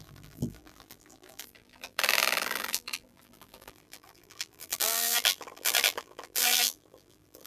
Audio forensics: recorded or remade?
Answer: remade